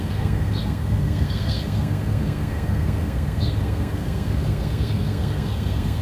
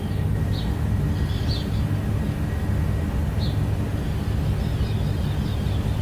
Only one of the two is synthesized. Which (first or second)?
first